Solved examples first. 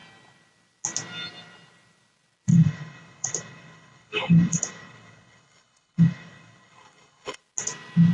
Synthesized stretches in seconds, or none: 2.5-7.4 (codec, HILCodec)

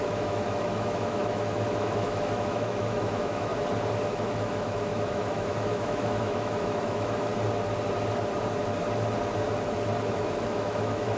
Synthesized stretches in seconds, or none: 0.0-3.5 (autoencoder, DAC-VAE); 4.1-7.3; 10.1-11.2

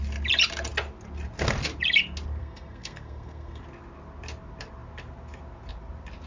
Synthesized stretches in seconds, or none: 2.4-3.6 (codec, SNAC)

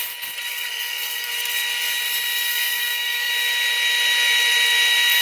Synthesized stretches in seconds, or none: 0.5-1.3 (codec, SNAC); 2.5-3.3

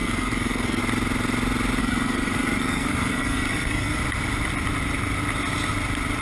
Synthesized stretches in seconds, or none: 0.0-0.8 (codec, SNAC); 1.8-4.0

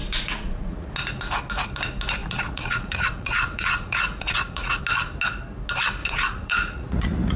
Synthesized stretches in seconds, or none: 0.0-0.9 (vocoder, Vocos); 2.2-4.8; 6.0-7.4

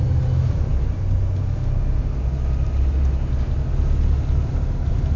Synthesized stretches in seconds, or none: none